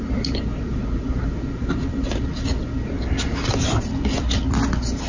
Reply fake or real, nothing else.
real